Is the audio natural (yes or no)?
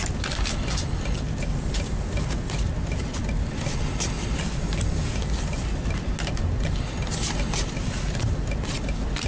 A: yes